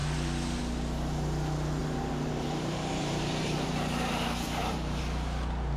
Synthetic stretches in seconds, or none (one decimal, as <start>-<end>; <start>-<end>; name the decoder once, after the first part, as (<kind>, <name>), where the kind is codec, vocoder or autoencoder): 1.8-5.0 (vocoder, BigVGAN v2)